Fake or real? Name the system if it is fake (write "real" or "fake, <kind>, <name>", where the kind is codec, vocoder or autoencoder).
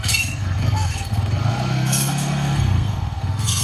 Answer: fake, codec, SNAC